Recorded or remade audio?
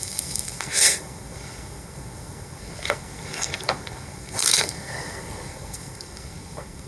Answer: remade